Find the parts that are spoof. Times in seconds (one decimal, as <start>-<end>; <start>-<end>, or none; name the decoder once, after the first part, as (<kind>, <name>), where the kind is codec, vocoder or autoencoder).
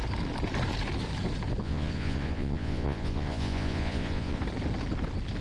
1.6-4.4 (vocoder, Vocos)